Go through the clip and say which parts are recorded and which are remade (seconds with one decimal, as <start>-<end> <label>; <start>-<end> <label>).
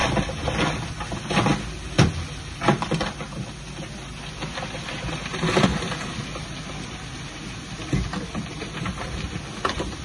0.0-10.0 recorded